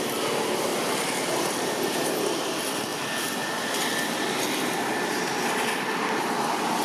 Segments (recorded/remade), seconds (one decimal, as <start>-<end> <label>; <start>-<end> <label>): 0.0-0.7 recorded; 0.7-2.2 remade; 2.2-6.8 recorded